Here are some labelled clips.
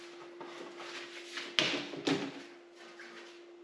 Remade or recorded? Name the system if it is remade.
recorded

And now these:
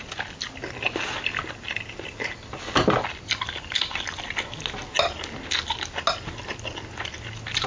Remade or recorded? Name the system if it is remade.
recorded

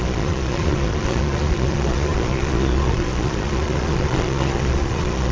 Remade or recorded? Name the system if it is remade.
remade, vocoder, Vocos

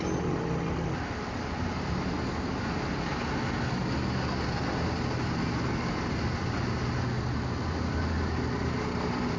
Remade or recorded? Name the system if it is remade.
recorded